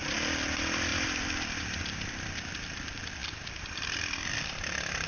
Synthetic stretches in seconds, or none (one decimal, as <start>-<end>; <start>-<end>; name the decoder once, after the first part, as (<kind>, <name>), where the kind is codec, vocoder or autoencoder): 0.0-3.2 (vocoder, BigVGAN v2); 3.8-5.1